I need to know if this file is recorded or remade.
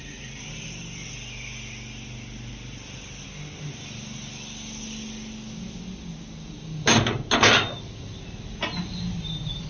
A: recorded